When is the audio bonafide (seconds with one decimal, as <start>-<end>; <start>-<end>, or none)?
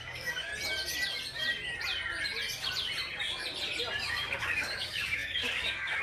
0.5-4.1